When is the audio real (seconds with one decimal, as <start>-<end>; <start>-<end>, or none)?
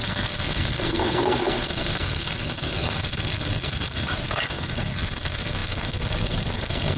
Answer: none